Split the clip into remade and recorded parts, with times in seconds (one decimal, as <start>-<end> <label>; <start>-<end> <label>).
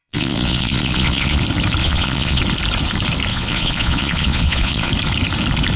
0.0-1.4 remade; 1.4-1.8 recorded; 1.8-2.4 remade; 2.4-3.3 recorded; 3.3-4.9 remade; 4.9-5.8 recorded